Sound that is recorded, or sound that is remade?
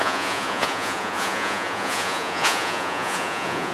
remade